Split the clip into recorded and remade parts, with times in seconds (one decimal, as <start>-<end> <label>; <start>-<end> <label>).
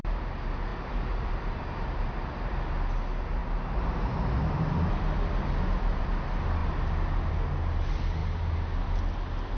0.0-0.7 recorded; 0.7-2.5 remade; 2.5-9.6 recorded